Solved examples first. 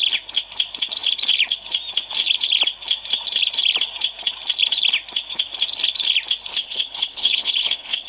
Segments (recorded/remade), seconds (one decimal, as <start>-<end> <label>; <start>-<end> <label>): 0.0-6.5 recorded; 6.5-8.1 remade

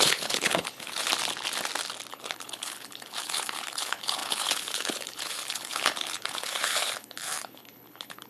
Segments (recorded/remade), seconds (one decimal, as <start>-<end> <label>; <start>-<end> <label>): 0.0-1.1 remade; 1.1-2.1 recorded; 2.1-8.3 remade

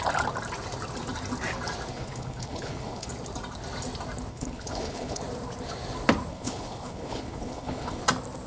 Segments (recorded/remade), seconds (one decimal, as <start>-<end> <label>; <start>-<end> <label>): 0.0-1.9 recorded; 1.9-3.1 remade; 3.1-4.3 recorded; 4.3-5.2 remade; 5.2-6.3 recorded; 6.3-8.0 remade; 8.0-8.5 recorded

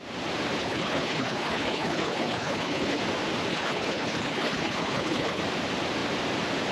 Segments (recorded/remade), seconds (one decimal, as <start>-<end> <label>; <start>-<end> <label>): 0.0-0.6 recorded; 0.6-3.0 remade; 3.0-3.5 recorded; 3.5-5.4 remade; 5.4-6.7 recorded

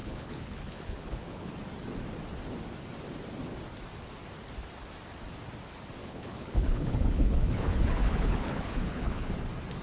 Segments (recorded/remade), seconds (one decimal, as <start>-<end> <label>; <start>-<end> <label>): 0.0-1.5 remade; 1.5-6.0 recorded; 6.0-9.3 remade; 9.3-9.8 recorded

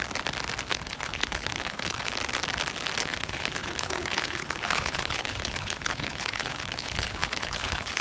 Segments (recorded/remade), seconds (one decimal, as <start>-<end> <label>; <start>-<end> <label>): 0.0-0.7 recorded; 0.7-2.1 remade; 2.1-3.0 recorded; 3.0-8.0 remade

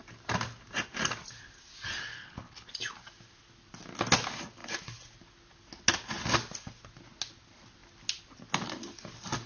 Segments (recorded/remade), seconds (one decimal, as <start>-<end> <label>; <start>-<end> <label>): 0.0-2.1 recorded; 2.1-2.7 remade; 2.7-9.5 recorded

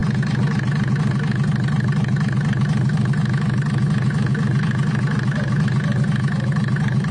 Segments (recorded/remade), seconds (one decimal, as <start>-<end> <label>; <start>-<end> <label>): 0.0-7.1 recorded